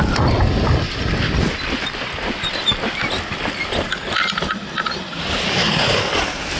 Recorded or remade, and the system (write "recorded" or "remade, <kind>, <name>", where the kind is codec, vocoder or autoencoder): recorded